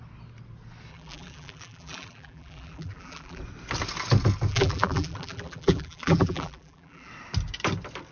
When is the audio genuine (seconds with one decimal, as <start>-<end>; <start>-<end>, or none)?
0.0-0.9; 3.4-4.5; 7.1-8.1